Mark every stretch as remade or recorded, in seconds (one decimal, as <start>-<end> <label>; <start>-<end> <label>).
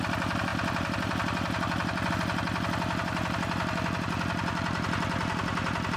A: 0.0-0.5 recorded; 0.5-2.1 remade; 2.1-6.0 recorded